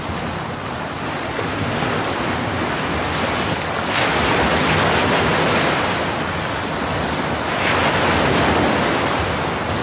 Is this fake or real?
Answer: real